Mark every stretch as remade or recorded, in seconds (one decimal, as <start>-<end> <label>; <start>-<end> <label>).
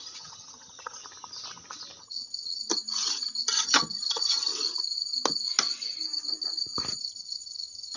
0.0-1.0 remade; 1.0-2.0 recorded; 2.0-2.7 remade; 2.7-3.4 recorded; 3.4-4.5 remade; 4.5-7.0 recorded; 7.0-8.0 remade